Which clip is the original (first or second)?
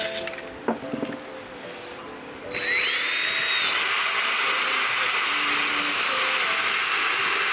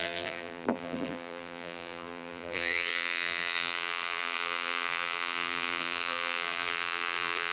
first